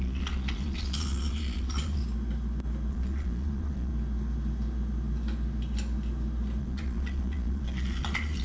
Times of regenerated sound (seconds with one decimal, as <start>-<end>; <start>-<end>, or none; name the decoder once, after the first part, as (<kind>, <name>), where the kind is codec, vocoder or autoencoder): 0.0-2.0 (vocoder, Vocos); 2.9-3.9; 6.6-8.4